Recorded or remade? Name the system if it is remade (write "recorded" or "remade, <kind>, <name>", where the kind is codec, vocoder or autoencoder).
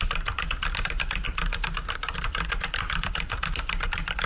remade, vocoder, BigVGAN v2